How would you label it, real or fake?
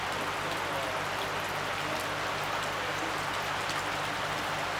real